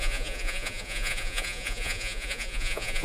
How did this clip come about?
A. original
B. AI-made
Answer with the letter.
B